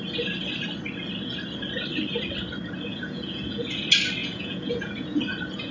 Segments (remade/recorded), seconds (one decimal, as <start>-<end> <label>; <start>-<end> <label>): 0.0-2.9 recorded; 2.9-3.8 remade; 3.8-4.2 recorded; 4.2-5.2 remade; 5.2-5.7 recorded